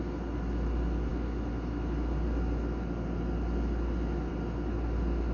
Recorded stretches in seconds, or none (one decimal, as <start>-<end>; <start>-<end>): 0.0-5.3